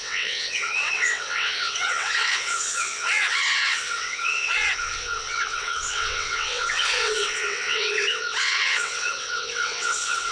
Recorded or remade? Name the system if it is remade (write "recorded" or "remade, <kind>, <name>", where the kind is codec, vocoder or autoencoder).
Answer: remade, vocoder, WaveNeXt